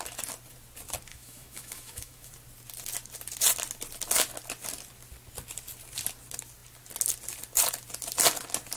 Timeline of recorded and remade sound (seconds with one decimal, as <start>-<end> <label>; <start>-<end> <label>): 0.0-1.1 recorded; 1.1-2.3 remade; 2.3-8.8 recorded